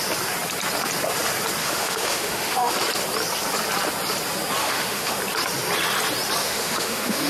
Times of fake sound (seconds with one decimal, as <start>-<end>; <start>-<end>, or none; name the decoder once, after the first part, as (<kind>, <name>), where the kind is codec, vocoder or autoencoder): 1.6-2.7 (autoencoder, DAC-VAE); 4.6-5.2; 6.4-7.3